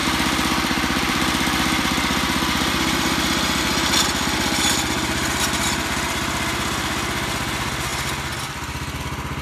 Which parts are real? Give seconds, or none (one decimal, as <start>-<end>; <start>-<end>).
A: 3.6-9.4

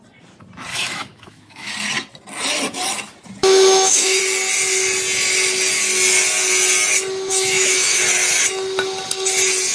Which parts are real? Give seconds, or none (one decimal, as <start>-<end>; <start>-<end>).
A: 0.0-0.7; 1.7-3.4; 4.2-7.3; 8.0-9.7

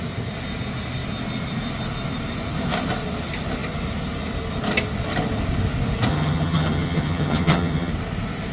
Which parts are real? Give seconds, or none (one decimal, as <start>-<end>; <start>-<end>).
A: 0.0-6.1; 7.9-8.5

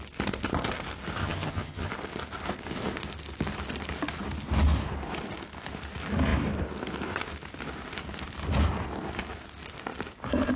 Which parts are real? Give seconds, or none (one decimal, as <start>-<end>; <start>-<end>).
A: 0.0-1.2; 1.9-10.6

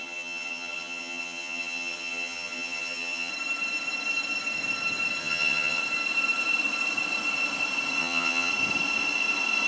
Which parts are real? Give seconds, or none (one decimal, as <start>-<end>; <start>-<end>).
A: 3.3-5.2; 5.8-8.0; 8.5-9.7